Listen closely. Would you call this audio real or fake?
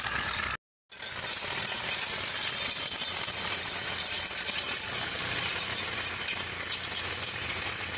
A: real